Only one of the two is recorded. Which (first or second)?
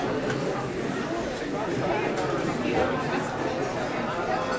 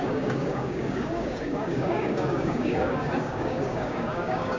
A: first